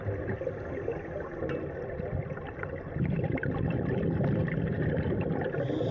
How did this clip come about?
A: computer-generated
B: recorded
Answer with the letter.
B